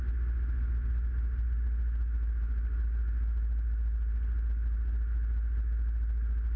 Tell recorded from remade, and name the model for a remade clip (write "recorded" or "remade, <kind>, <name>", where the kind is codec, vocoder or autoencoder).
recorded